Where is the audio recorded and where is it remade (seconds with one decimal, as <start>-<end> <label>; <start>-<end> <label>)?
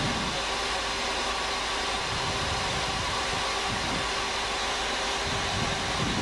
0.0-6.2 recorded